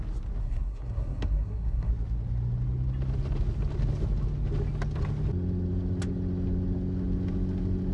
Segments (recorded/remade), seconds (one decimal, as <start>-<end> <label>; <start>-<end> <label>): 0.0-0.4 recorded; 0.4-1.9 remade; 1.9-7.9 recorded